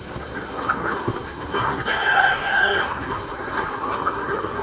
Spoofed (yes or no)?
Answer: yes